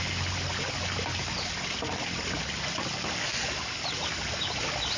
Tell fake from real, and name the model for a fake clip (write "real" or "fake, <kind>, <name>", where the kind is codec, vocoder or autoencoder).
real